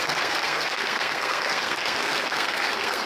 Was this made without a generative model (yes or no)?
no